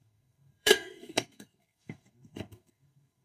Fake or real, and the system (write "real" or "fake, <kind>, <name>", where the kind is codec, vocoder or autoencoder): fake, codec, SNAC